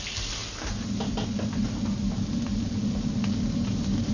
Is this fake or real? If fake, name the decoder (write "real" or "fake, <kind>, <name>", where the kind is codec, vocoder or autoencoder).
real